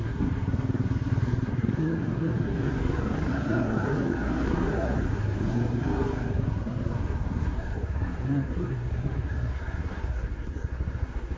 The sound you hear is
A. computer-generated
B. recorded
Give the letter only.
A